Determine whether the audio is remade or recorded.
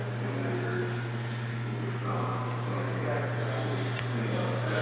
recorded